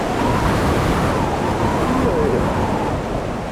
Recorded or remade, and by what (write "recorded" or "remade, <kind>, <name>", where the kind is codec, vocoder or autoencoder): recorded